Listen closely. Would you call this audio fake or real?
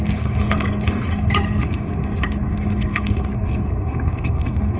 fake